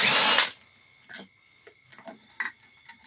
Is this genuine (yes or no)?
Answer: yes